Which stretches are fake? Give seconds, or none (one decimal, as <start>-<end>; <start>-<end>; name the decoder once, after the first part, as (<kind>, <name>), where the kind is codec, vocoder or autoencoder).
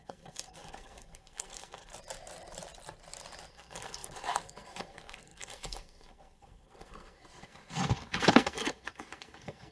0.0-1.9 (codec, SNAC); 3.5-9.7